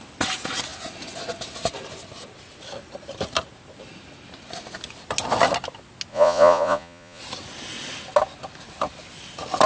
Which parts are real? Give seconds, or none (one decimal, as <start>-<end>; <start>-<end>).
0.0-6.1; 7.2-9.7